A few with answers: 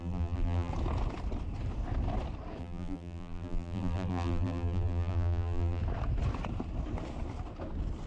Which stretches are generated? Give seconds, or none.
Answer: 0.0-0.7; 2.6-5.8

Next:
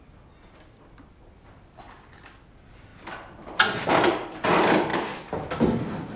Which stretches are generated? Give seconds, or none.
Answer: none

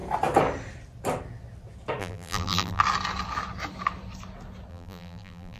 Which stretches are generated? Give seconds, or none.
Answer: 2.0-2.8; 4.7-5.6

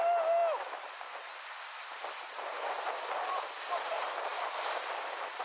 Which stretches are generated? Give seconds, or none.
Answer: none

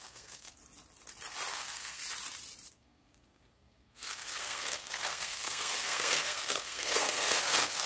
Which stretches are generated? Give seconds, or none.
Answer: 0.0-0.6; 1.5-2.0; 2.7-7.9

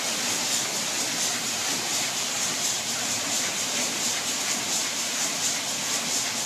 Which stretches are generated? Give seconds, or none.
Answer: 1.3-5.2